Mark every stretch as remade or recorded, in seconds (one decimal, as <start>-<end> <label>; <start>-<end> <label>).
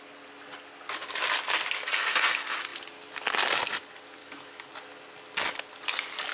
0.0-4.2 recorded; 4.2-4.7 remade; 4.7-6.3 recorded